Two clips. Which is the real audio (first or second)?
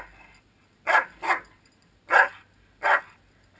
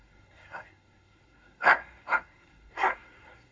first